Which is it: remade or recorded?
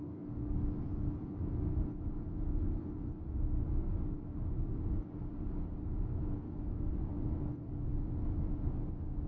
recorded